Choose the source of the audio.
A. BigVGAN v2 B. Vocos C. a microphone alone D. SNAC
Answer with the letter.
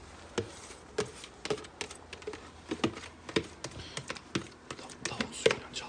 C